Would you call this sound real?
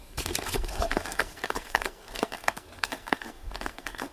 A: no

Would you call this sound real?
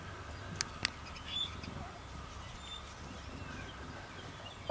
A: yes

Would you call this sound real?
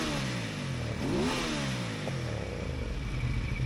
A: yes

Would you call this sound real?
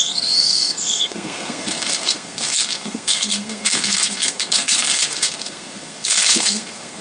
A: no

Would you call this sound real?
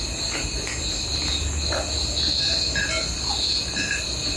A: yes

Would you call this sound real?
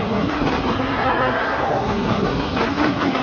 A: no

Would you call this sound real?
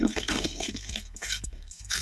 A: no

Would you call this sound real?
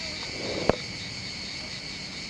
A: yes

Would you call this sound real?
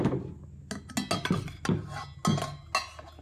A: yes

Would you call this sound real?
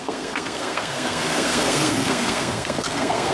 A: no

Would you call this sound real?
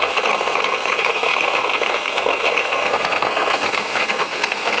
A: no